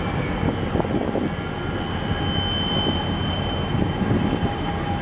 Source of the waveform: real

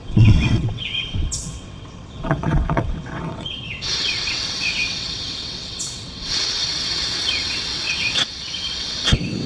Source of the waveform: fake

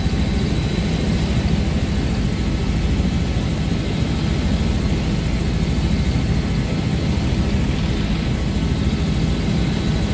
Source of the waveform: real